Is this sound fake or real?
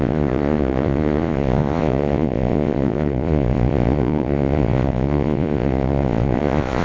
fake